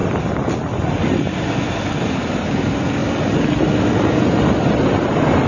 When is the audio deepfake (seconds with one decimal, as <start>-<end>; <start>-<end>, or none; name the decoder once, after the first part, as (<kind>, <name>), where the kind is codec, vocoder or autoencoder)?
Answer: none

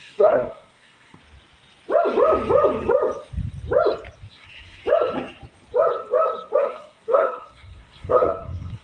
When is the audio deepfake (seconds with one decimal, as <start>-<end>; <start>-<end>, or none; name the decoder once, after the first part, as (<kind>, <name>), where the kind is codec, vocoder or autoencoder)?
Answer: 0.0-1.2 (codec, SNAC); 4.3-4.8; 6.6-8.8

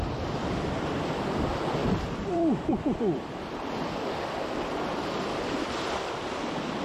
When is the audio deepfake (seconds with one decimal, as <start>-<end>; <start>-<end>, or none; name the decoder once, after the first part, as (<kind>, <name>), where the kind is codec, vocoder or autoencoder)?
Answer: 0.0-6.8 (vocoder, BigVGAN v2)

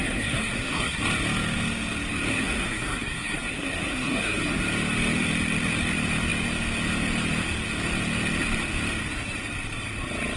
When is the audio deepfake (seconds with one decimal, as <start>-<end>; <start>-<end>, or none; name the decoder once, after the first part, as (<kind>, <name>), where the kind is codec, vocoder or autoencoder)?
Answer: 0.0-1.0 (codec, SNAC); 2.3-4.6

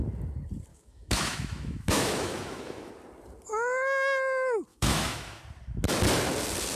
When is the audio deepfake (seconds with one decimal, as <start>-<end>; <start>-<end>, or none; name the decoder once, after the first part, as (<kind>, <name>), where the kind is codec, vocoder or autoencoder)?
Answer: 0.7-2.9 (autoencoder, DAC-VAE); 4.7-5.4